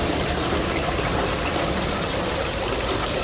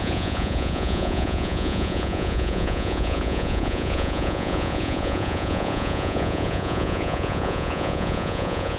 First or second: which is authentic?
first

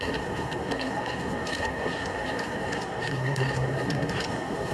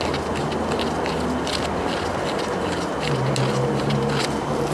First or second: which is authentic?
second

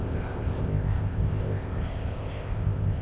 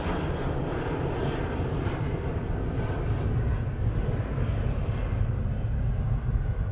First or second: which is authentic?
second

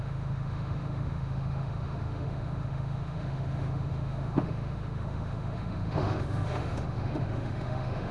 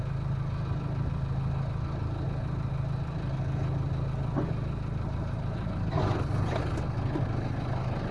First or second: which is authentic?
second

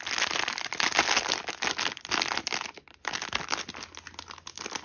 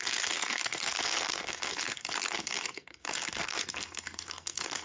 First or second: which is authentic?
first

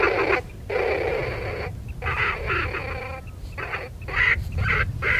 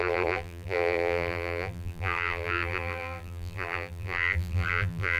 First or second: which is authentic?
first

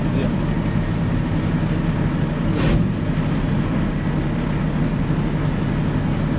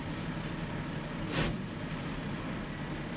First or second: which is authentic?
first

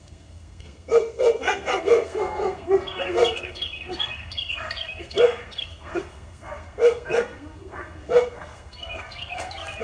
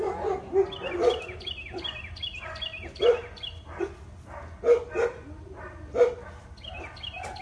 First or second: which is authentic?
second